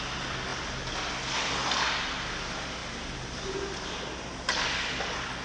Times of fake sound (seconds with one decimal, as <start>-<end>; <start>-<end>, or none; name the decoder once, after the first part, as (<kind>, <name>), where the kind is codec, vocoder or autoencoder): none